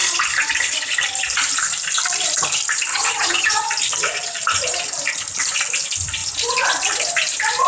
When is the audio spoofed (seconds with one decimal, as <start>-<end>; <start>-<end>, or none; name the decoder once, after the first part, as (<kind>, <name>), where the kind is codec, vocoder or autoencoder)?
2.9-3.6 (vocoder, HiFi-GAN)

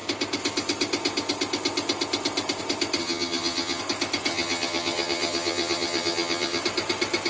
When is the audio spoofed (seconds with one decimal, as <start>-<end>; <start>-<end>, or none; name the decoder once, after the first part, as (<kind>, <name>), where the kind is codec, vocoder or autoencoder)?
3.0-3.8 (vocoder, HiFi-GAN); 4.3-6.6

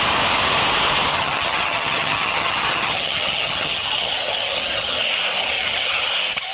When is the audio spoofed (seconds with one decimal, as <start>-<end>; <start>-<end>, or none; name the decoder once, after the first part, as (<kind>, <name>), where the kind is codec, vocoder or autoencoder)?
1.1-5.0 (vocoder, HiFi-GAN); 5.4-6.1

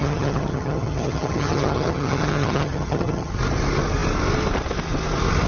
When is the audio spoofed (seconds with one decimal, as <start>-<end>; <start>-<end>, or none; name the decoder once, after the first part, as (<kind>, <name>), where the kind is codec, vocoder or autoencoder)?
0.0-3.3 (vocoder, HiFi-GAN)

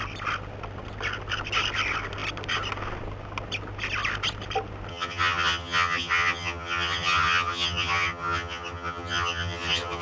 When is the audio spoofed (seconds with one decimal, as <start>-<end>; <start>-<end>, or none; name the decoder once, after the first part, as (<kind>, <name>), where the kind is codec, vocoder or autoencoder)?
4.9-10.0 (vocoder, HiFi-GAN)

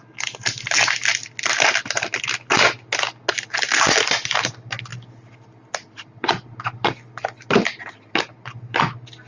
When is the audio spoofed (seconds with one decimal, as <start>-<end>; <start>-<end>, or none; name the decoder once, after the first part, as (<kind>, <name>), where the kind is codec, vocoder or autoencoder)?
none

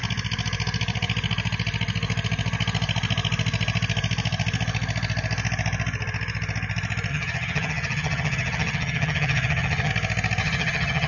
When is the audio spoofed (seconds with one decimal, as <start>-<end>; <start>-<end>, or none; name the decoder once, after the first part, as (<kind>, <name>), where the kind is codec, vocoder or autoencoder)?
7.1-9.9 (vocoder, HiFi-GAN); 10.4-11.1

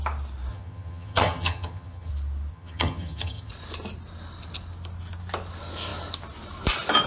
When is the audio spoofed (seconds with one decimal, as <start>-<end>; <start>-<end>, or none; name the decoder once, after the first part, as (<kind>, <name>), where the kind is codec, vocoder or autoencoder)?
0.5-2.1 (vocoder, HiFi-GAN); 2.5-3.5